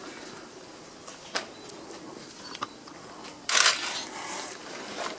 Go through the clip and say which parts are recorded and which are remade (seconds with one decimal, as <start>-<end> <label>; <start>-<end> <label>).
0.0-5.2 recorded